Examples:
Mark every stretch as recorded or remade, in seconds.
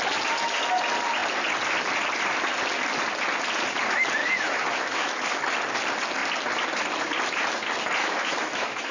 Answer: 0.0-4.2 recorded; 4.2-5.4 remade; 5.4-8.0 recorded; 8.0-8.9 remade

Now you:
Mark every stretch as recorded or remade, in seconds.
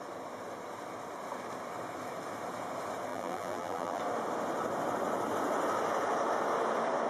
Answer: 0.0-3.1 recorded; 3.1-4.0 remade; 4.0-7.1 recorded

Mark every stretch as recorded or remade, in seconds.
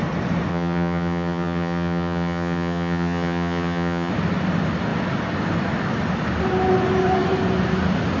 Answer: 0.0-0.5 recorded; 0.5-4.1 remade; 4.1-8.2 recorded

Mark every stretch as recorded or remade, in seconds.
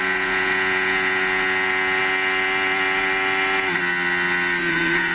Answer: 0.0-2.0 remade; 2.0-4.6 recorded; 4.6-5.1 remade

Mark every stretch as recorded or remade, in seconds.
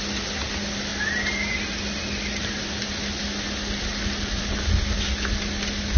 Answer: 0.0-6.0 recorded